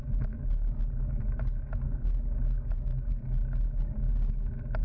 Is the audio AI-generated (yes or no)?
no